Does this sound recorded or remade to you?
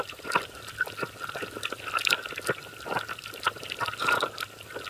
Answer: remade